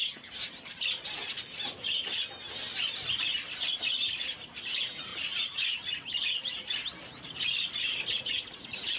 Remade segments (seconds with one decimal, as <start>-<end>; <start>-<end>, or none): 0.0-5.1; 8.6-9.0